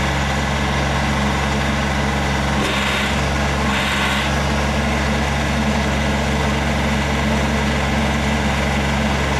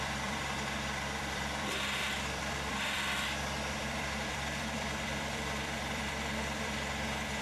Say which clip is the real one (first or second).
first